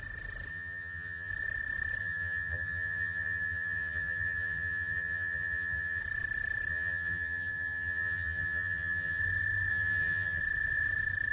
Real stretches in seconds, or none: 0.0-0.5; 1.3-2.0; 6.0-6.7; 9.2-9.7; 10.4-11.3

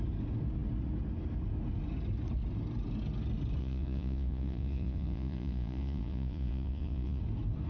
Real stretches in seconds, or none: 0.0-3.6; 7.2-7.7